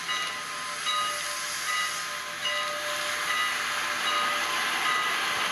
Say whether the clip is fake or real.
real